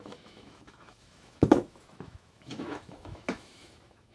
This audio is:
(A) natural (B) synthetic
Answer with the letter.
B